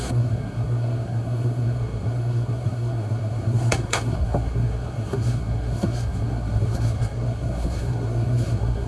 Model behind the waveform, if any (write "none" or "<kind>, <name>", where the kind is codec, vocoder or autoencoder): codec, SNAC